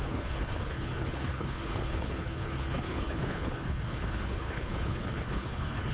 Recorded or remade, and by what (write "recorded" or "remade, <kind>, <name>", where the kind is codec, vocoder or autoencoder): remade, codec, HILCodec